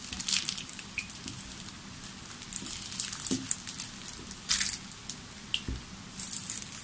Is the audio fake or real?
real